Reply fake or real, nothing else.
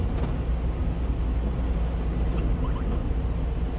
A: real